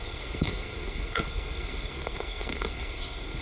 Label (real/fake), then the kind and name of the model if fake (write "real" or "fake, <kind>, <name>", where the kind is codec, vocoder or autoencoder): fake, codec, SNAC